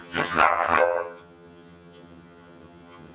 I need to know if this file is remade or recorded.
remade